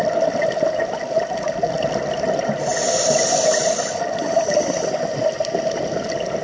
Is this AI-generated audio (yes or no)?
no